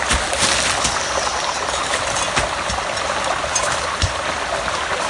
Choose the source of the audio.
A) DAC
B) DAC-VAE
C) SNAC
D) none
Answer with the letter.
D